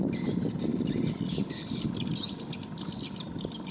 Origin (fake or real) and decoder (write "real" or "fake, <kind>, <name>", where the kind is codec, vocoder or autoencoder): real